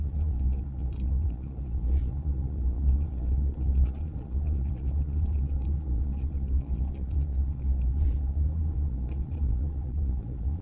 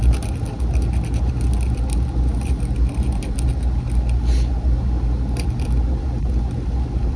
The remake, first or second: first